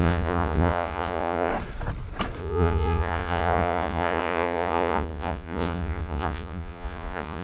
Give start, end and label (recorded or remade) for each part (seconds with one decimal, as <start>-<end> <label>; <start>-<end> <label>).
0.0-1.5 remade; 1.5-2.4 recorded; 2.4-7.4 remade